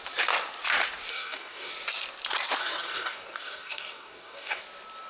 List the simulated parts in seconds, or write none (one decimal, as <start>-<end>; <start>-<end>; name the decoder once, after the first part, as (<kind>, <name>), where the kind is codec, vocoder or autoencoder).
1.1-1.7 (codec, DAC); 2.6-4.6